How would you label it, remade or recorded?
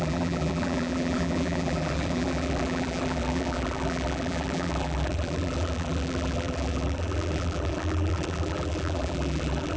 remade